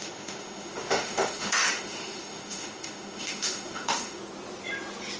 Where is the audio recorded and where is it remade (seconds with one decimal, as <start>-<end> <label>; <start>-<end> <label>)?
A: 0.0-4.2 remade; 4.2-5.2 recorded